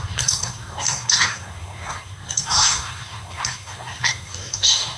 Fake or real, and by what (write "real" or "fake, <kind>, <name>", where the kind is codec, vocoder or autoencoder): fake, codec, SNAC